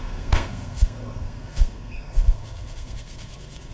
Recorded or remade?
remade